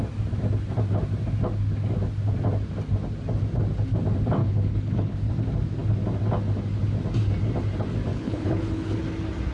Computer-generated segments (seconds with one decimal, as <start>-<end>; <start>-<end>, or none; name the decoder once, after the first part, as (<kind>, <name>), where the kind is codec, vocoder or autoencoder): 4.4-5.3 (codec, HILCodec); 8.1-9.0